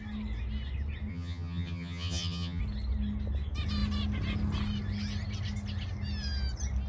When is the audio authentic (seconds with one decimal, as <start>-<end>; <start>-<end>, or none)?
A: 0.0-1.1; 2.6-6.9

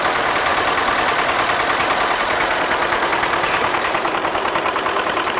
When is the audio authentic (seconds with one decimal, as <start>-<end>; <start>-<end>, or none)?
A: 0.5-2.2

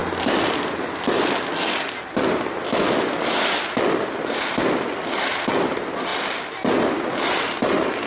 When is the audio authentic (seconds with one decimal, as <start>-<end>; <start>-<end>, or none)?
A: 0.0-8.1